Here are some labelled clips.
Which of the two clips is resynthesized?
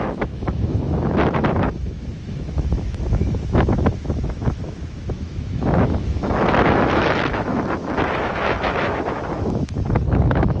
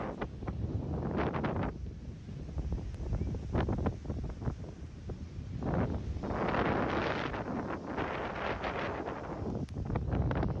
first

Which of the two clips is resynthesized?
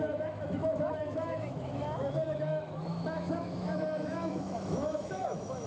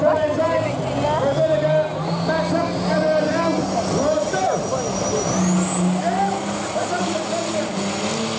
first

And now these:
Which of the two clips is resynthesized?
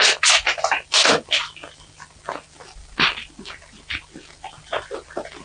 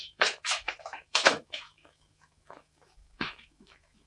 second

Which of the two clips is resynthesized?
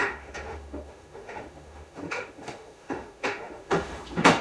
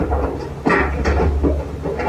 first